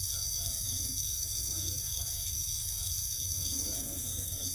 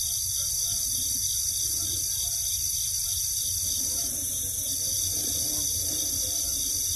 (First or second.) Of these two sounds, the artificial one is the first